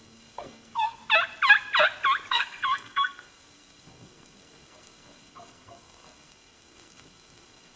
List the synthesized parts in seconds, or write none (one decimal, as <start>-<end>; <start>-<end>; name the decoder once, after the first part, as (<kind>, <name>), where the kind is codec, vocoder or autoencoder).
0.0-1.0 (codec, SNAC); 2.3-7.8